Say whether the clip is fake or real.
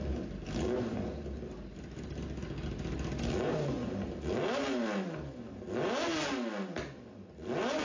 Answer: real